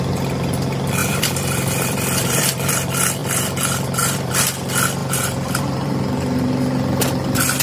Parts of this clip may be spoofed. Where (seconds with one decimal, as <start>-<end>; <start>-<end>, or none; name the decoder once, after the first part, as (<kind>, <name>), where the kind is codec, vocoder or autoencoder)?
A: 1.0-2.7 (vocoder, BigVGAN v2); 3.2-4.3; 5.0-6.0